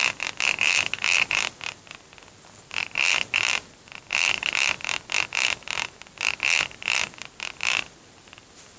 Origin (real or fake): real